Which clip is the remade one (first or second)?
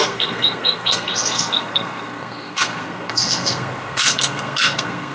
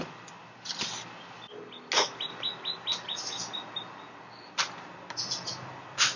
first